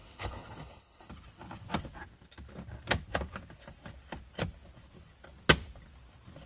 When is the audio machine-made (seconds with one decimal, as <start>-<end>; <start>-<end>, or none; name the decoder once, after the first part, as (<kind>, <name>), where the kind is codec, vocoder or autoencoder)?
0.0-1.1 (codec, HILCodec)